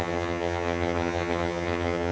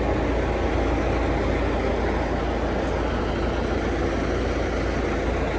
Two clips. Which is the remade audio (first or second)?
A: first